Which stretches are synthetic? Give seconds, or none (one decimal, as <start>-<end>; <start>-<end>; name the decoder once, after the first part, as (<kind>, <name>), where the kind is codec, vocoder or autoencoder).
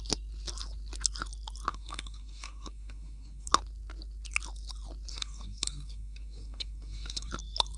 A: 1.7-3.5 (codec, SNAC); 5.1-7.3